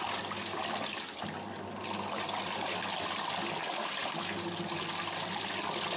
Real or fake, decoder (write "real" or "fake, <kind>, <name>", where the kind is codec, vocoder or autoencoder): real